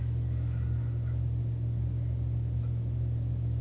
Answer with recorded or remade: recorded